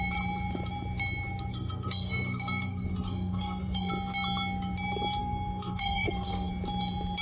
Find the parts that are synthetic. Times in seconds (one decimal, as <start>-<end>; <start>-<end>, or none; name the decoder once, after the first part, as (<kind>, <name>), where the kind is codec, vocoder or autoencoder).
1.5-3.9 (codec, SNAC); 5.2-6.5